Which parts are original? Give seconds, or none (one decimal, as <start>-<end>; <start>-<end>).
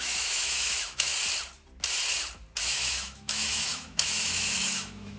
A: 1.1-2.6